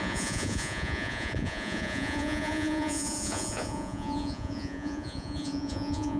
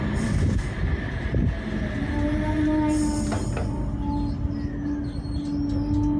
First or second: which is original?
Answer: second